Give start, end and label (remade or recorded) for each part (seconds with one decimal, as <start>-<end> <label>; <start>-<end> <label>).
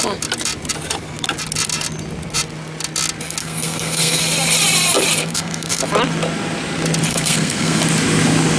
0.0-3.4 recorded; 3.4-4.2 remade; 4.2-5.2 recorded; 5.2-5.8 remade; 5.8-7.1 recorded; 7.1-7.8 remade; 7.8-8.6 recorded